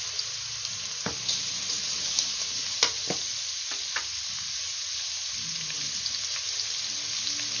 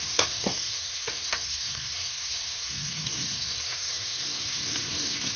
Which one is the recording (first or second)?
first